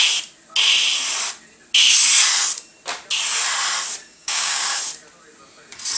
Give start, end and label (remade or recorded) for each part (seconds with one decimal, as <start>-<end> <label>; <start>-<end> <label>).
0.0-4.1 recorded; 4.1-4.8 remade; 4.8-6.0 recorded